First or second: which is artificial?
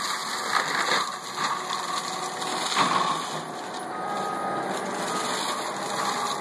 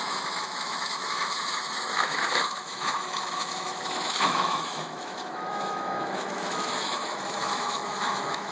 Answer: second